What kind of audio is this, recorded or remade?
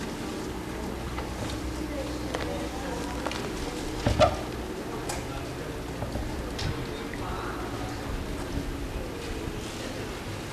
recorded